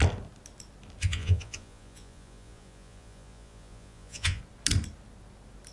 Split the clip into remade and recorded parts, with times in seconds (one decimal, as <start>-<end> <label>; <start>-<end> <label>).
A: 0.0-1.0 recorded; 1.0-4.4 remade; 4.4-5.7 recorded